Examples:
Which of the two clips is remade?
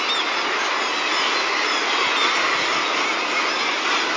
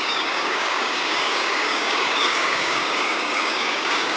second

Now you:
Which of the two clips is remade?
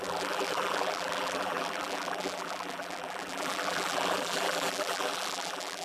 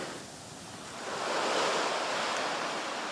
first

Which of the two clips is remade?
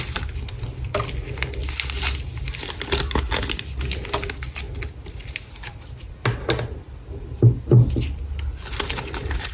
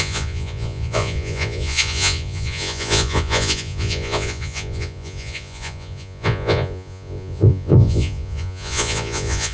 second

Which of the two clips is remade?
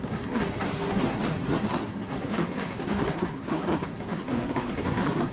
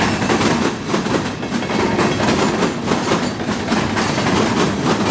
first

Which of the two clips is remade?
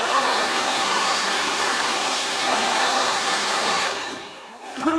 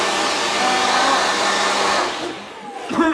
first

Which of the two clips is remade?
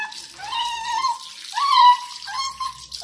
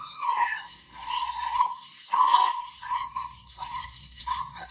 second